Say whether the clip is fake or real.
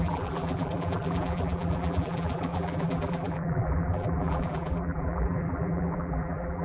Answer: fake